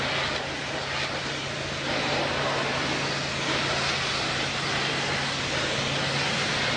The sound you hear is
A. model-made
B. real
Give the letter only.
B